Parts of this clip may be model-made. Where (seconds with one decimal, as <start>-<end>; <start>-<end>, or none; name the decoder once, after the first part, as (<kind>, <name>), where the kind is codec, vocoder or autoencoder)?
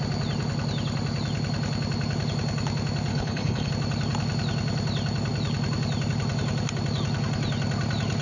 3.1-3.7 (codec, HILCodec)